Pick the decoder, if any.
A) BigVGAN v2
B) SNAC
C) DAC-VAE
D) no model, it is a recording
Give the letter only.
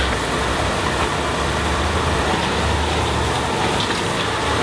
D